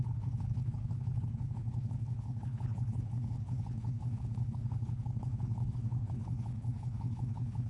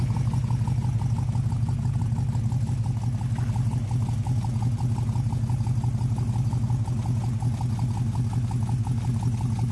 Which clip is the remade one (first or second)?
first